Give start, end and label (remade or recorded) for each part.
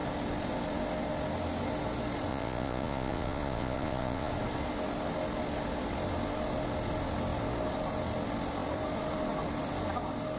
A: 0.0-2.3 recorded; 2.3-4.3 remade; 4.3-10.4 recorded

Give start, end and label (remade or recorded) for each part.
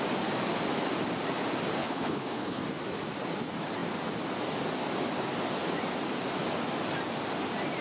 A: 0.0-1.8 recorded; 1.8-2.6 remade; 2.6-7.8 recorded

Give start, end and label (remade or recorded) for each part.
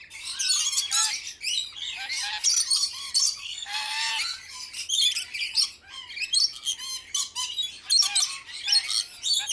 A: 0.0-3.4 recorded; 3.4-4.1 remade; 4.1-9.5 recorded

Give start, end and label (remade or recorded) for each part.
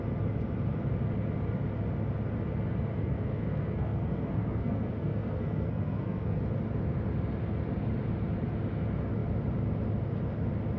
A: 0.0-2.9 recorded; 2.9-6.4 remade; 6.4-10.8 recorded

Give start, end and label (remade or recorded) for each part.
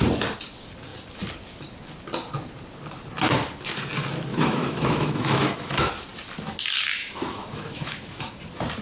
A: 0.0-4.3 recorded; 4.3-5.9 remade; 5.9-7.0 recorded; 7.0-8.4 remade; 8.4-8.8 recorded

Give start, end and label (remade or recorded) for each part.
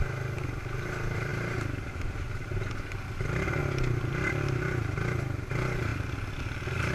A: 0.0-6.9 recorded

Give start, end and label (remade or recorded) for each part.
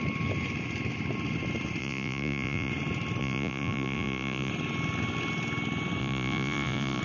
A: 0.0-1.8 recorded; 1.8-2.7 remade; 2.7-3.2 recorded; 3.2-4.5 remade; 4.5-6.0 recorded; 6.0-7.0 remade